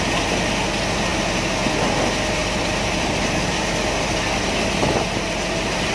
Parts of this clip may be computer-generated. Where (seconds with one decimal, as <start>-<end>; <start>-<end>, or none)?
2.4-5.9